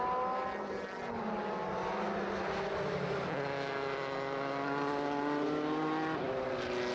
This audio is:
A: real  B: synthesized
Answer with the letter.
A